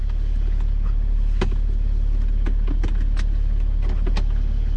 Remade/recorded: recorded